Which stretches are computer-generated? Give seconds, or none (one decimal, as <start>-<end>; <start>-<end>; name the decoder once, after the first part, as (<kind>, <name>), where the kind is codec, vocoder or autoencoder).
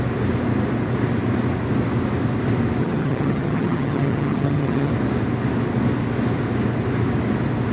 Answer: 2.8-4.9 (vocoder, HiFi-GAN)